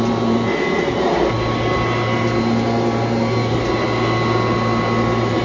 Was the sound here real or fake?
real